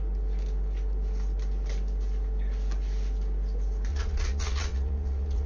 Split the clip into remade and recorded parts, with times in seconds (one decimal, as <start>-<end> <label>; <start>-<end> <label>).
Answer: 0.0-3.9 recorded; 3.9-5.5 remade